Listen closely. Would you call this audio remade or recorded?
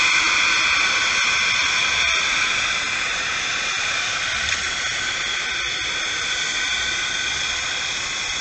recorded